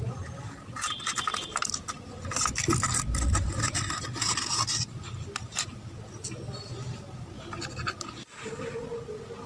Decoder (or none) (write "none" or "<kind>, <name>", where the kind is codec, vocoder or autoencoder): none